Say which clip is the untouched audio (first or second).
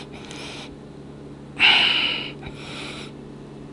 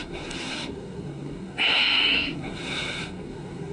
first